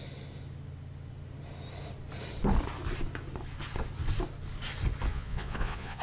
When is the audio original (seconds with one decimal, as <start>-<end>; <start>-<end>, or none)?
0.0-5.1